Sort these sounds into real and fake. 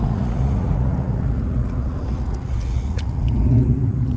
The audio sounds fake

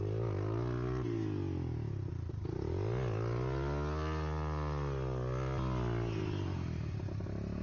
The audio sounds real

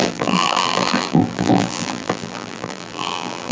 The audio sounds fake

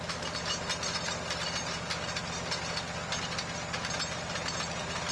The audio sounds real